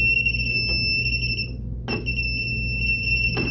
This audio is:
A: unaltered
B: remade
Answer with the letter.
A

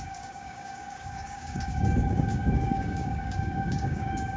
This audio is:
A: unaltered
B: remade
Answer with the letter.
B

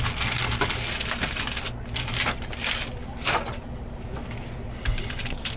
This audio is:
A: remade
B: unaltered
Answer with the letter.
B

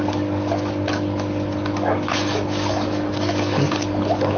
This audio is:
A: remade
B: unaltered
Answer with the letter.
A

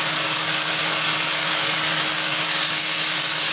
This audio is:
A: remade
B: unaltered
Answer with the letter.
A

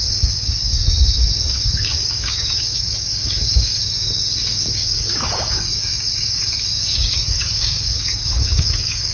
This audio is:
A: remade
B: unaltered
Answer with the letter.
A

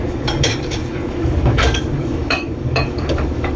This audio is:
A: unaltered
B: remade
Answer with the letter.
B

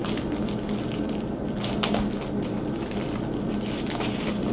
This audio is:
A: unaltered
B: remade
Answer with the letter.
A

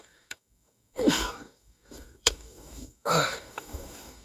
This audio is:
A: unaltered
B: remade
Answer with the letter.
B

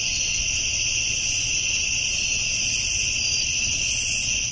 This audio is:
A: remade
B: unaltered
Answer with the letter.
B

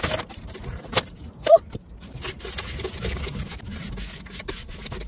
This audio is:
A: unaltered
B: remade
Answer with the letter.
A